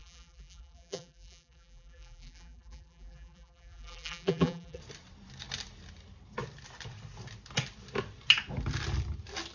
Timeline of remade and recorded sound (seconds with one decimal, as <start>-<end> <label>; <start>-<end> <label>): 0.0-4.8 remade; 4.8-9.5 recorded